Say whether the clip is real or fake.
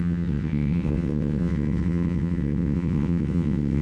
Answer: fake